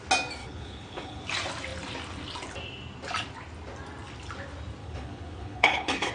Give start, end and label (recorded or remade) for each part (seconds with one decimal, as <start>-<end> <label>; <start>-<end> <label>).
0.0-0.4 recorded; 0.4-1.2 remade; 1.2-4.8 recorded; 4.8-6.1 remade